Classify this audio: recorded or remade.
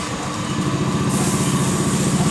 recorded